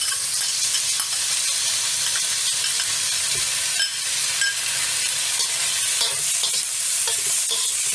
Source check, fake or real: real